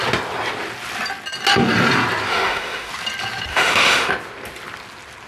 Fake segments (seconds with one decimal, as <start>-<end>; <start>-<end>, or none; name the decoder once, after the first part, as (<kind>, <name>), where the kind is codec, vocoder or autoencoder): 2.3-2.9 (autoencoder, DAC-VAE); 3.5-4.1